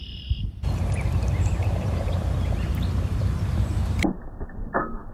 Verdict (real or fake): fake